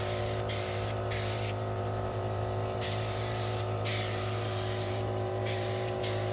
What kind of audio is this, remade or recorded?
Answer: remade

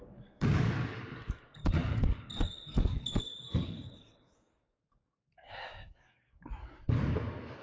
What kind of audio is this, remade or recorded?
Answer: remade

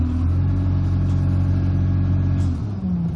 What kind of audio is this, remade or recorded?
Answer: recorded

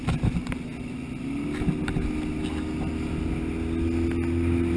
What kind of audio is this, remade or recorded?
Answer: recorded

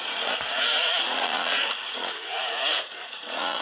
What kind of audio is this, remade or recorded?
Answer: remade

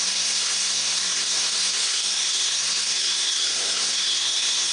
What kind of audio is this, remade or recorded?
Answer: remade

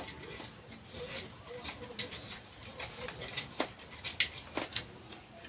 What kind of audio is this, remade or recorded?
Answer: recorded